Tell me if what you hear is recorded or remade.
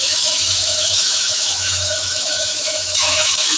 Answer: remade